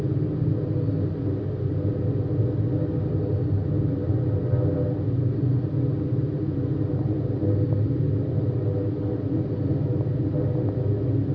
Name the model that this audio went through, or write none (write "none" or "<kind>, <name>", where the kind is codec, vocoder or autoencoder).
none